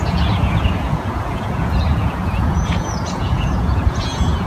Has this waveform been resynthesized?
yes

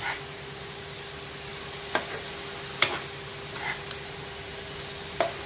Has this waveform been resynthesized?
no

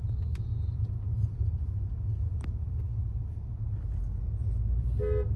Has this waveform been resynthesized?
no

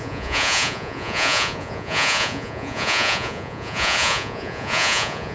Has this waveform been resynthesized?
yes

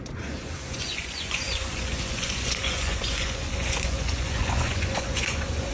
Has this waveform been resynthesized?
yes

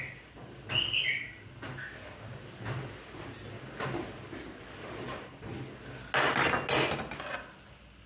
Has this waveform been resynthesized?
no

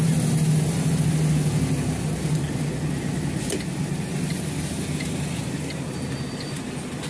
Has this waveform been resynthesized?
no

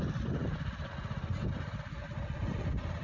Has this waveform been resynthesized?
no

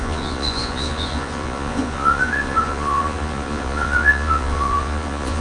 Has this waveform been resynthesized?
yes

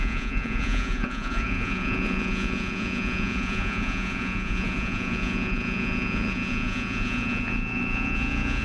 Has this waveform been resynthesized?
yes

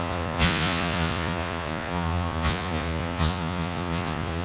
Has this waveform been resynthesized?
yes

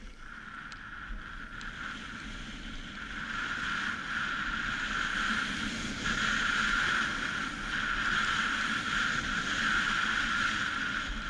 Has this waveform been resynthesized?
no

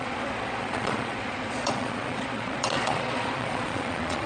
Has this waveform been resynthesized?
yes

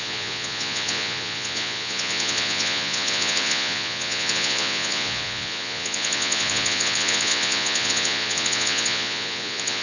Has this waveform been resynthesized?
yes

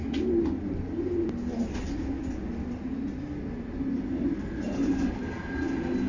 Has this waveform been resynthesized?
no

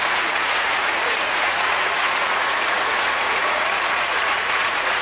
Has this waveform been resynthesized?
yes